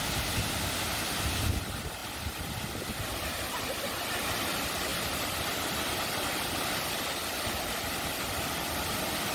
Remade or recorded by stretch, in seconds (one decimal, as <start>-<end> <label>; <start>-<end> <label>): 0.0-9.3 recorded